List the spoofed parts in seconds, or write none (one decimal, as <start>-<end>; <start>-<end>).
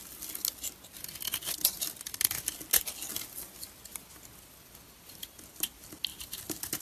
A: none